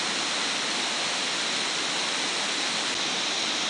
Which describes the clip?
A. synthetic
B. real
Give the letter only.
B